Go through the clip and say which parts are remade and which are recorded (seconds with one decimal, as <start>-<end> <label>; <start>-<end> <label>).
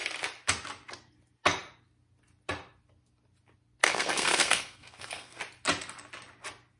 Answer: 0.0-3.8 recorded; 3.8-5.4 remade; 5.4-6.8 recorded